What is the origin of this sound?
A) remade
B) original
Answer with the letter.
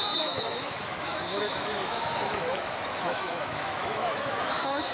A